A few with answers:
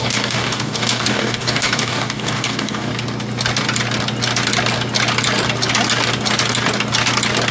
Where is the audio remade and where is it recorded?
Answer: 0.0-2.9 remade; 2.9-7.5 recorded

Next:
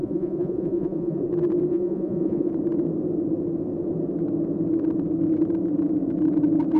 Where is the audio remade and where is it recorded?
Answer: 0.0-1.2 remade; 1.2-1.7 recorded; 1.7-2.5 remade; 2.5-6.8 recorded

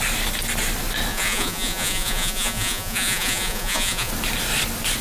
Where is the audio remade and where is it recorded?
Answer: 0.0-1.1 recorded; 1.1-4.1 remade; 4.1-5.0 recorded

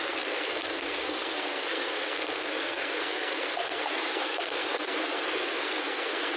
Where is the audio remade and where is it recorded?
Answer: 0.0-6.4 remade

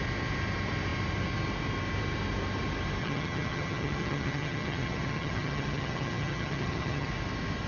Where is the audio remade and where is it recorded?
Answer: 0.0-3.0 recorded; 3.0-7.1 remade; 7.1-7.7 recorded

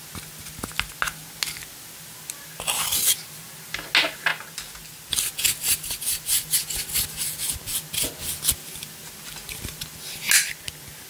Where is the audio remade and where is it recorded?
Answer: 0.0-11.1 recorded

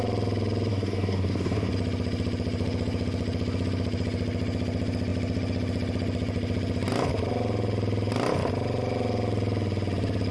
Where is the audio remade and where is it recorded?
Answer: 0.0-0.7 recorded; 0.7-1.7 remade; 1.7-10.3 recorded

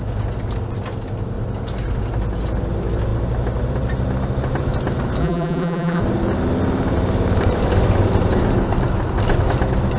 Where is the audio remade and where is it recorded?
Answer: 0.0-5.2 recorded; 5.2-6.0 remade; 6.0-10.0 recorded